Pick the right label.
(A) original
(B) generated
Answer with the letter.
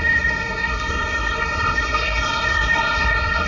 B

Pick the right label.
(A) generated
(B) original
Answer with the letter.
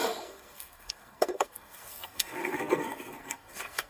A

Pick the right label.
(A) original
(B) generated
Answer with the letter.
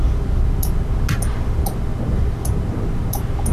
A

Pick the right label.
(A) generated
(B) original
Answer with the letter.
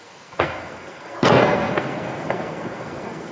A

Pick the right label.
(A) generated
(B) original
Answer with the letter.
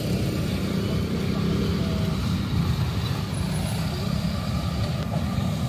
B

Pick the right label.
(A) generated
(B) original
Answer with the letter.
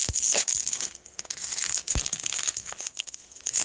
A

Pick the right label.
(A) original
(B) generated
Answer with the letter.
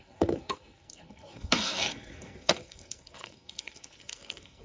B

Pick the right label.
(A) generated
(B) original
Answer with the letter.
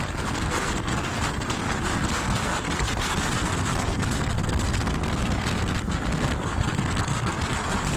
A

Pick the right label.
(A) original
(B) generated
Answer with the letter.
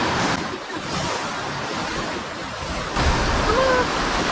A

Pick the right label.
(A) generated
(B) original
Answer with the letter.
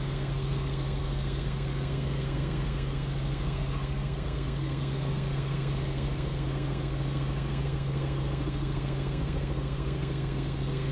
A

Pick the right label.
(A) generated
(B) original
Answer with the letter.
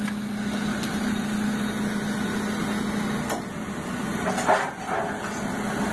B